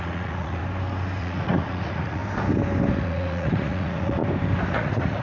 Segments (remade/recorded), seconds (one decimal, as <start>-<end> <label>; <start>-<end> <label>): 0.0-0.6 remade; 0.6-1.2 recorded; 1.2-2.2 remade; 2.2-2.9 recorded; 2.9-4.2 remade; 4.2-4.7 recorded; 4.7-5.2 remade